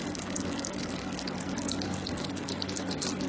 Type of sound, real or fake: fake